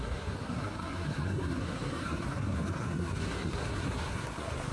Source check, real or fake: fake